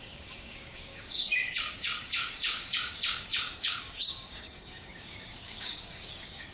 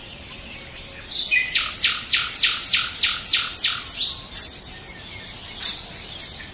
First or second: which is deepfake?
first